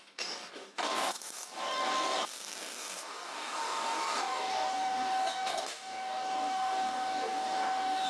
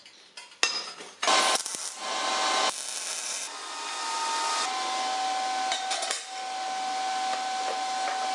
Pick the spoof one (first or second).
first